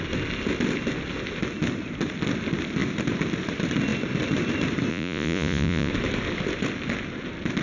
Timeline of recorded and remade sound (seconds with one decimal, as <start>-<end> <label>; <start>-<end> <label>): 0.0-4.9 recorded; 4.9-5.9 remade; 5.9-7.6 recorded